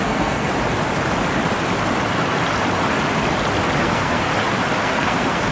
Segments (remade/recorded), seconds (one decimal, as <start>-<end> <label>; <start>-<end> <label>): 0.0-0.5 remade; 0.5-3.8 recorded; 3.8-4.3 remade; 4.3-4.8 recorded; 4.8-5.5 remade